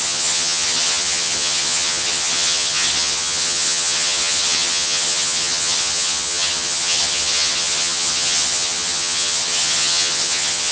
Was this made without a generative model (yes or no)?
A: no